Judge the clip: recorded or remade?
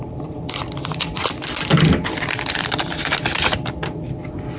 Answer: remade